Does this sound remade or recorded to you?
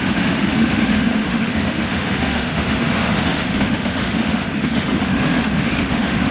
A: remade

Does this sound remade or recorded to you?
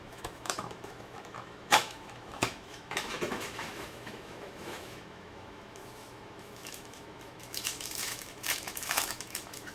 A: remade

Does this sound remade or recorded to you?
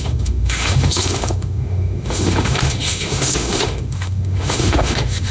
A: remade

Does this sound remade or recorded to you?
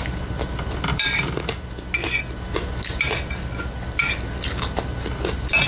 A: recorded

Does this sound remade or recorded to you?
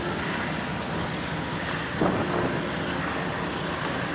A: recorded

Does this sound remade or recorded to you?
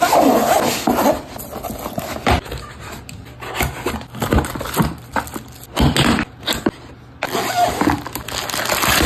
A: recorded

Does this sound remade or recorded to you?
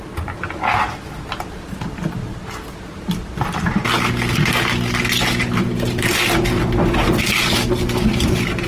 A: recorded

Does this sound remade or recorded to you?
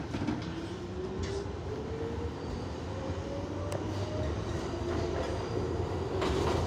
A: recorded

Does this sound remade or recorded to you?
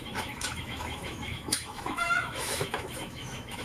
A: remade